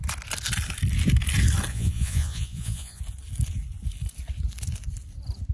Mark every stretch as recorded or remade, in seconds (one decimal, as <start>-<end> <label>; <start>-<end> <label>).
0.0-1.7 recorded; 1.7-3.0 remade; 3.0-5.5 recorded